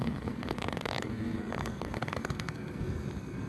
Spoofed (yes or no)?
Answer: yes